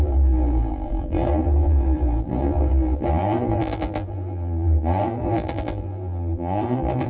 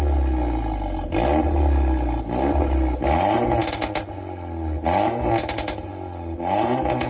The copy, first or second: first